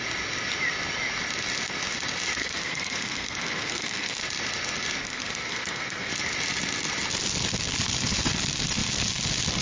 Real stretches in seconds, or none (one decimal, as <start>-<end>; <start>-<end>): 0.0-2.4; 4.2-5.0; 6.1-9.6